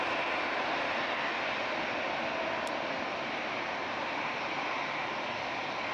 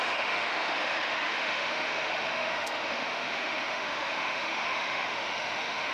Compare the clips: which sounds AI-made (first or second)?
second